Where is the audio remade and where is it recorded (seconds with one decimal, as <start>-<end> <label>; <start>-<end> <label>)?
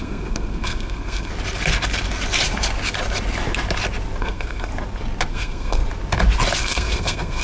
0.0-1.3 remade; 1.3-4.2 recorded; 4.2-4.7 remade; 4.7-5.3 recorded; 5.3-5.8 remade; 5.8-6.6 recorded; 6.6-7.4 remade